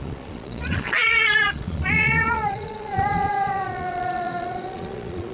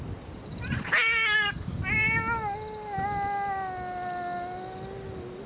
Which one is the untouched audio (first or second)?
second